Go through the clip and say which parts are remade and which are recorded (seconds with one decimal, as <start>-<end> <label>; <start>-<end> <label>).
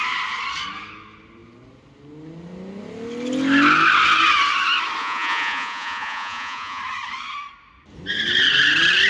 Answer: 0.0-5.0 recorded; 5.0-6.8 remade; 6.8-9.1 recorded